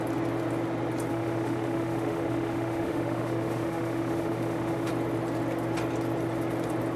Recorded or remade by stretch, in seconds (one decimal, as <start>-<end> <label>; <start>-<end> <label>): 0.0-1.1 recorded; 1.1-4.9 remade; 4.9-7.0 recorded